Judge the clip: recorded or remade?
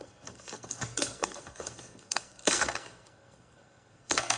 remade